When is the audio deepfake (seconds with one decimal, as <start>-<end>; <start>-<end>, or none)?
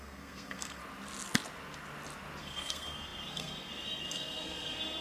0.0-0.8; 2.4-5.0